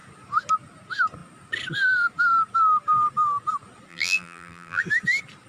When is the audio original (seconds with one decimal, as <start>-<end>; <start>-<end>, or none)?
0.0-3.9; 4.8-5.5